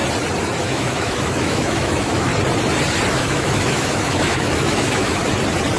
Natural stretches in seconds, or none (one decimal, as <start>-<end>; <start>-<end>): 0.0-0.6; 2.3-3.1; 5.2-5.8